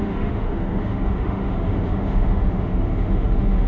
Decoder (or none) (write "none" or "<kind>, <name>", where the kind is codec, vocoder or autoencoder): autoencoder, DAC-VAE